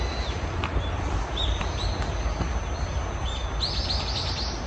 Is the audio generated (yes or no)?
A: no